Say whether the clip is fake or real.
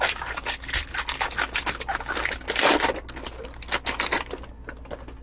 real